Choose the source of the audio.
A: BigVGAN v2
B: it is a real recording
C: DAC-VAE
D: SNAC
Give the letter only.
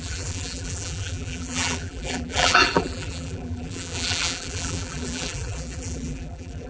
A